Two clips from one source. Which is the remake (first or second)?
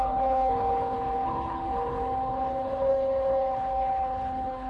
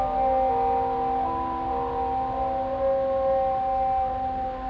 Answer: first